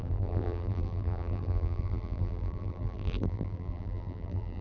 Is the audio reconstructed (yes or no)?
yes